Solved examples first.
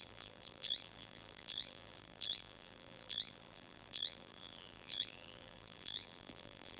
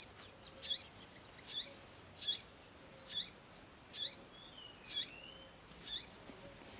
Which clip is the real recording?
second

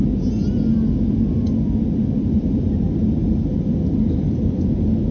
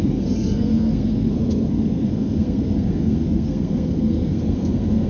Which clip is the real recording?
first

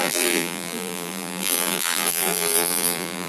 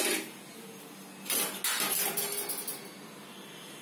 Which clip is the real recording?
second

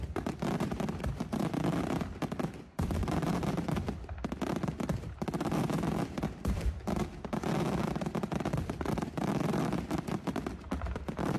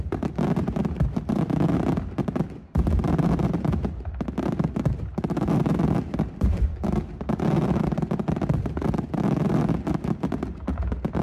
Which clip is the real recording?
second